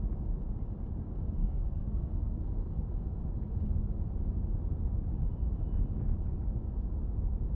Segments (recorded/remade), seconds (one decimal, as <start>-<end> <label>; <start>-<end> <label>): 0.0-1.4 recorded; 1.4-2.9 remade; 2.9-7.5 recorded